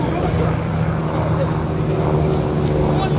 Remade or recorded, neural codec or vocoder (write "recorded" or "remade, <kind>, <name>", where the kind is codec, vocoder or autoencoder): recorded